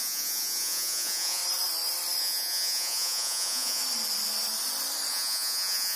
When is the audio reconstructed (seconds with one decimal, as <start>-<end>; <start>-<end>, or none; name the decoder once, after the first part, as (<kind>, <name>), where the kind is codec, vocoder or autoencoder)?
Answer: 0.0-1.4 (vocoder, Vocos); 2.2-3.8; 5.1-6.0